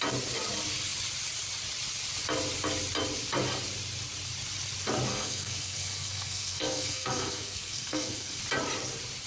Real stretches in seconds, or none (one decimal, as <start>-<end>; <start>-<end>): 0.0-5.1; 8.4-9.3